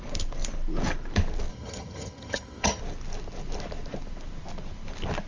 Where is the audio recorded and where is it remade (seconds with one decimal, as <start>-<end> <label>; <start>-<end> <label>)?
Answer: 0.0-1.5 recorded; 1.5-2.8 remade; 2.8-5.3 recorded